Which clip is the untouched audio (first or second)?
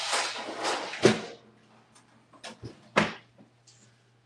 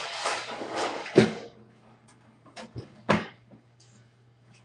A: first